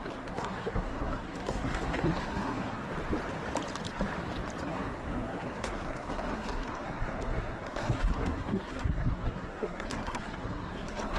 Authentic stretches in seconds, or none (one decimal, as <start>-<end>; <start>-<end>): 2.8-4.6